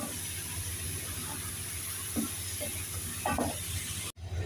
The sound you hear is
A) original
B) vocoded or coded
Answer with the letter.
A